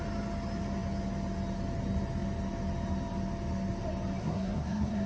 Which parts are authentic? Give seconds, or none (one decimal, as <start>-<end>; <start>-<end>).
0.0-4.2